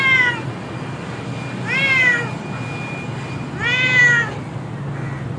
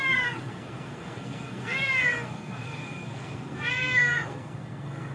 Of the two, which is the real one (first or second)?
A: first